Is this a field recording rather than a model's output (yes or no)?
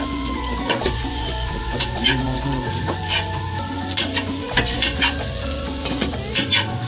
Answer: no